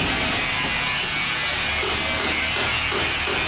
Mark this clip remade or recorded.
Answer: recorded